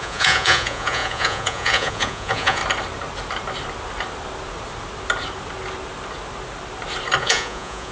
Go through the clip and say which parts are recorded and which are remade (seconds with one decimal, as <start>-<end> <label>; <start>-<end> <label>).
0.0-2.6 remade; 2.6-7.2 recorded; 7.2-7.9 remade